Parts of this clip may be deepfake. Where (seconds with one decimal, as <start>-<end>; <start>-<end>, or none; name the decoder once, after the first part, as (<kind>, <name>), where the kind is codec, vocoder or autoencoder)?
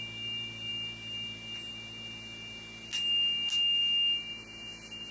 none